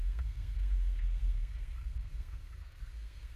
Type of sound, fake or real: fake